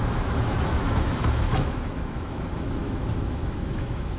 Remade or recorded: remade